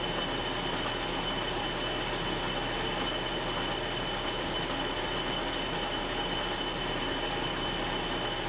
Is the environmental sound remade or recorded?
recorded